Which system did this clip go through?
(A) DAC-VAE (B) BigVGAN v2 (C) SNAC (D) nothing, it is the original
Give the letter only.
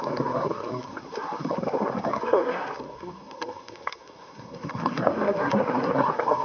C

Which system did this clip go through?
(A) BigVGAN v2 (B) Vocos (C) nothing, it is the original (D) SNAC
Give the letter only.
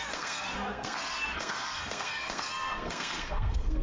D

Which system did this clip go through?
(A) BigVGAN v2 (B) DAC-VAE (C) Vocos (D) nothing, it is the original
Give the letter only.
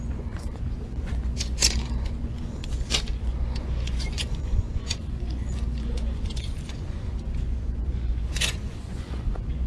C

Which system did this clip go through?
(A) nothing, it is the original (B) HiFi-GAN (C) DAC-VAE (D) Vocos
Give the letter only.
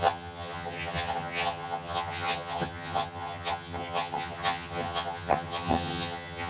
B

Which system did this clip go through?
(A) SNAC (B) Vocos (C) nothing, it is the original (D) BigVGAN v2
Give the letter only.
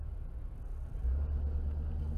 C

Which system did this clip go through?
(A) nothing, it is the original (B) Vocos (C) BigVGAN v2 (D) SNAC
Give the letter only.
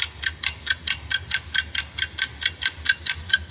A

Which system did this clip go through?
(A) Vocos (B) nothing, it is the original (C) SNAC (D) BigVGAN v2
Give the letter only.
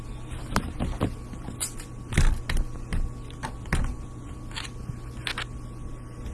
B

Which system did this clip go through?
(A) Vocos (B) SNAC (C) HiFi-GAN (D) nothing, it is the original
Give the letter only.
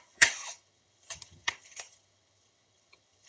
C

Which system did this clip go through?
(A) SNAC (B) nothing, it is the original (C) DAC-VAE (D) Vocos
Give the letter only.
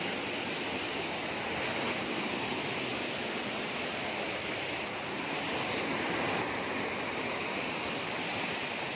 B